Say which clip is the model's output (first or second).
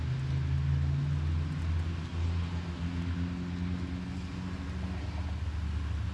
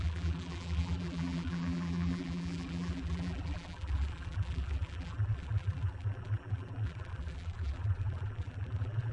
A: second